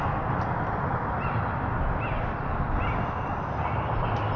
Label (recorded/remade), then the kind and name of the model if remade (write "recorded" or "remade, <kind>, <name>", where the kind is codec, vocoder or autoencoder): recorded